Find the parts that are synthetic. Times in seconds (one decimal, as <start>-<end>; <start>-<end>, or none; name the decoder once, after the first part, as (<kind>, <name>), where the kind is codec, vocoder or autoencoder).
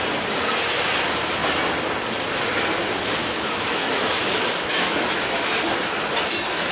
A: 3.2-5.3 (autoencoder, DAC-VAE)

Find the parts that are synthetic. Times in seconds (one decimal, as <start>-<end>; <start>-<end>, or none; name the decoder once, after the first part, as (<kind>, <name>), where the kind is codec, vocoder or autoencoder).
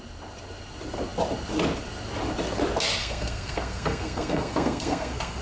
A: 3.0-5.4 (codec, SNAC)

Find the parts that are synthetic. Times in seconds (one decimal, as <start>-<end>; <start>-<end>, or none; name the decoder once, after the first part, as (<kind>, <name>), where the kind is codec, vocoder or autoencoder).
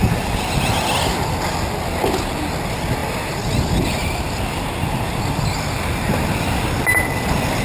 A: none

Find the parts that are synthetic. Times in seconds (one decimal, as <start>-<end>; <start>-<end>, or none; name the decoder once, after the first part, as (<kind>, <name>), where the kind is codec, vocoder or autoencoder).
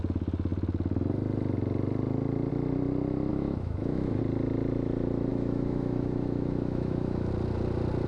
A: 3.3-4.2 (autoencoder, DAC-VAE); 5.3-7.3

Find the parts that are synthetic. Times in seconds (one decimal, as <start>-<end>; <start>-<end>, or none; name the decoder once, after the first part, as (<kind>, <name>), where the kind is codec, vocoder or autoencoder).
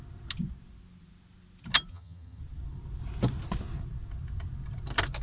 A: 1.9-2.4 (vocoder, HiFi-GAN)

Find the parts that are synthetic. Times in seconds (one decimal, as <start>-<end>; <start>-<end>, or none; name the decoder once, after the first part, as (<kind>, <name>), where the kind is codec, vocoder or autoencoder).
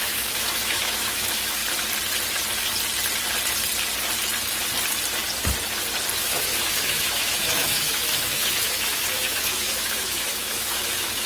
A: 0.0-1.6 (autoencoder, DAC-VAE); 6.2-11.3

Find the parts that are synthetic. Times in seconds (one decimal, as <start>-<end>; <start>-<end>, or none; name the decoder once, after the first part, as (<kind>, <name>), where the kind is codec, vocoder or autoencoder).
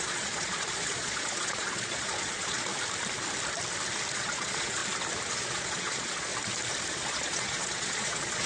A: 0.0-2.7 (vocoder, Vocos); 4.1-4.8; 5.3-6.3; 6.9-8.5